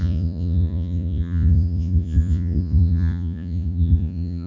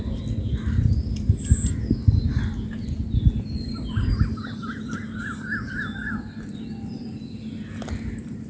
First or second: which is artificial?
first